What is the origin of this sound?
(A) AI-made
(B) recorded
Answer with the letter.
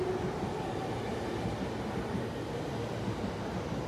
B